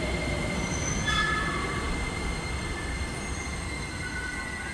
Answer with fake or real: real